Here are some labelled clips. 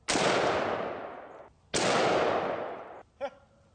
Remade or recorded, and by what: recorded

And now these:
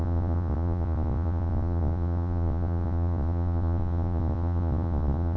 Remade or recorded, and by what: remade, vocoder, Vocos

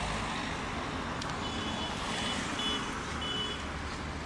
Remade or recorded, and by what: recorded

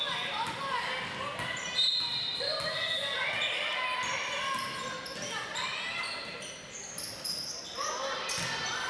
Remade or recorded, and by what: recorded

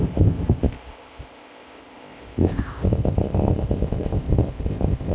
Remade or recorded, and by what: remade, codec, ZipCodec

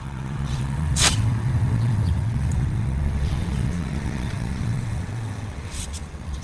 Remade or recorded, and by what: remade, vocoder, WaveNeXt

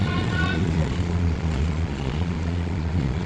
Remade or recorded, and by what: remade, vocoder, Vocos